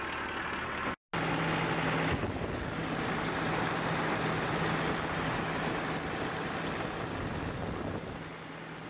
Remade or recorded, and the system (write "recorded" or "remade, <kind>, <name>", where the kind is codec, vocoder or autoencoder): recorded